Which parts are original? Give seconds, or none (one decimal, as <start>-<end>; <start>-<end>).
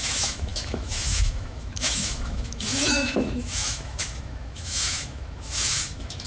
none